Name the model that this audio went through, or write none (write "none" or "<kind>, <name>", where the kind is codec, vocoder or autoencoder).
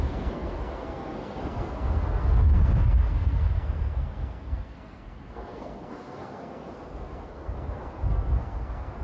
codec, SNAC